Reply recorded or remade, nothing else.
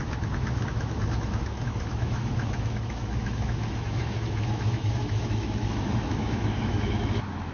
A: remade